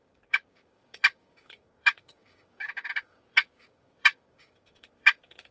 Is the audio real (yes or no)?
no